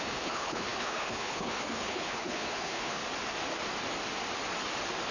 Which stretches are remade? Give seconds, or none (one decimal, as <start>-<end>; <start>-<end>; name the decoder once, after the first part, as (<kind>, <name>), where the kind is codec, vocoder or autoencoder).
0.0-3.0 (codec, HILCodec)